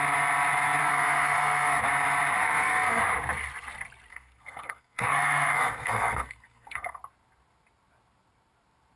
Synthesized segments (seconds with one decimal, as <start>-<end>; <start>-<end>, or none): 0.8-1.8; 2.4-3.0; 4.1-7.0